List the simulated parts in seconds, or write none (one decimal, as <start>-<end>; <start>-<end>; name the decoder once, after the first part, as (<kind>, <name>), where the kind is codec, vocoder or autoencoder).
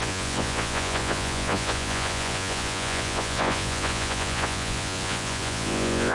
0.0-6.1 (vocoder, Vocos)